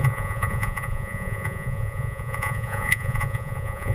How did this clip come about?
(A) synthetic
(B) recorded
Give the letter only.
A